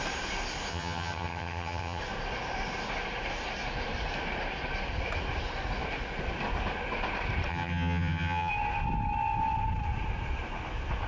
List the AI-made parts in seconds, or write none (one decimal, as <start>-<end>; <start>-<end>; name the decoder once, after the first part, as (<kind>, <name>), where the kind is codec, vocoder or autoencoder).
0.7-2.0 (vocoder, HiFi-GAN); 7.5-8.5